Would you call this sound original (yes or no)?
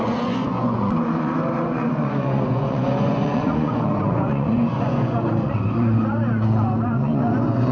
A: no